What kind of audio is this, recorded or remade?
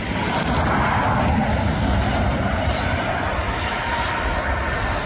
recorded